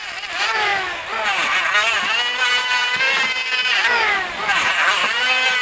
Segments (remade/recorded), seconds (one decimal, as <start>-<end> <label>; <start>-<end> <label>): 0.0-0.7 remade; 0.7-2.6 recorded; 2.6-5.6 remade